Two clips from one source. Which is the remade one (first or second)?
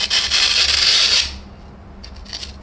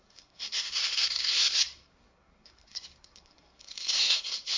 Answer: second